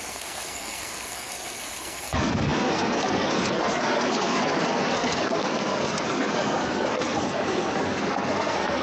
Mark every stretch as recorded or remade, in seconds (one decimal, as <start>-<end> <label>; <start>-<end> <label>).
0.0-8.8 remade